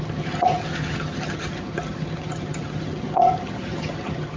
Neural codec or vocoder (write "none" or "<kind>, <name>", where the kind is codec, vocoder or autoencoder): vocoder, HiFi-GAN